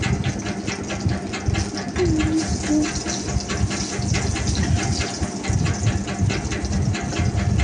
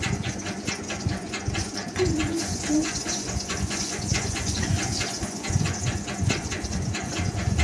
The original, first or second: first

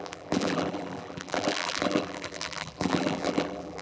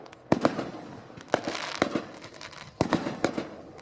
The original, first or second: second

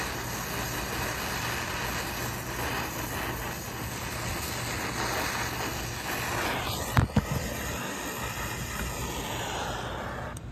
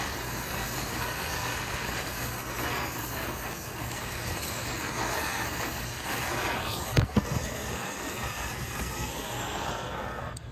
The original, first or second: first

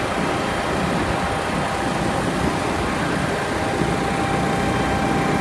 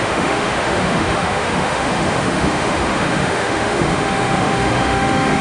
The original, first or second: first